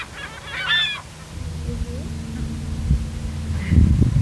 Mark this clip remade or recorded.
recorded